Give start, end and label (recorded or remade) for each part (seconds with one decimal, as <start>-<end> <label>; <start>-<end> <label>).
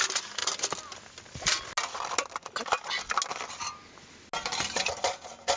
0.0-5.6 recorded